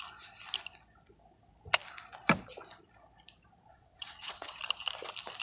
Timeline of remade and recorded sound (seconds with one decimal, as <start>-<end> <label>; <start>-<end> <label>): 0.0-3.7 recorded; 3.7-4.6 remade; 4.6-5.4 recorded

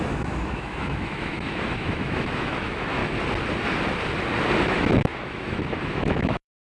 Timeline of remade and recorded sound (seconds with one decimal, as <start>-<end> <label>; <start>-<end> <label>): 0.0-3.0 remade; 3.0-4.6 recorded; 4.6-6.6 remade

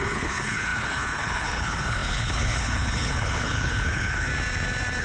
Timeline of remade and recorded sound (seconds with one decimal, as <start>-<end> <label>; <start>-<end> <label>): 0.0-4.3 remade; 4.3-5.0 recorded

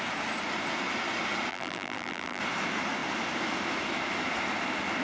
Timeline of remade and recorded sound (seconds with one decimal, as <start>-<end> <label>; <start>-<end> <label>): 0.0-1.5 recorded; 1.5-2.4 remade; 2.4-5.0 recorded

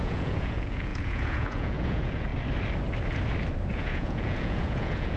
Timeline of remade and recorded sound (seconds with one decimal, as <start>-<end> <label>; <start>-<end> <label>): 0.0-2.3 remade; 2.3-3.7 recorded; 3.7-5.2 remade